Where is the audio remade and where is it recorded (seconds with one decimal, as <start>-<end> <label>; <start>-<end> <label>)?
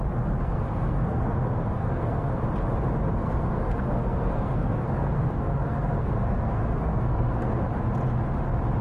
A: 0.0-0.4 recorded; 0.4-2.4 remade; 2.4-3.2 recorded; 3.2-7.6 remade; 7.6-8.8 recorded